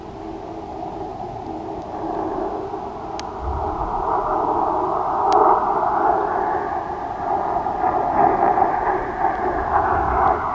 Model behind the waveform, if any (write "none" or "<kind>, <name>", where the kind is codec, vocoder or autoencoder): none